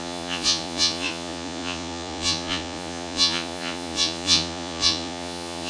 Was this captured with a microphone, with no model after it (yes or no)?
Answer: no